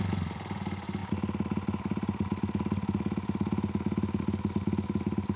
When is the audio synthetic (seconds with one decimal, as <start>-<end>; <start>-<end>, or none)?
none